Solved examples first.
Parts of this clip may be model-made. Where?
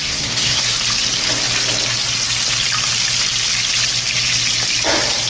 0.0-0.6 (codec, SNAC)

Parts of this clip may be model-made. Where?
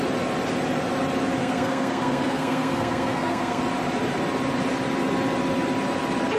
1.4-3.6 (codec, SNAC)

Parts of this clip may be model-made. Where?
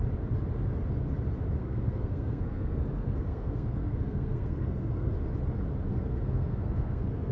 1.6-5.1 (codec, SNAC); 5.9-7.3